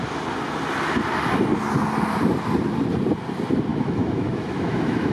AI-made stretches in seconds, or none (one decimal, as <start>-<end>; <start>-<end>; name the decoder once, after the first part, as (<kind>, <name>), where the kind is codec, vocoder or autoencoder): 3.7-5.1 (autoencoder, DAC-VAE)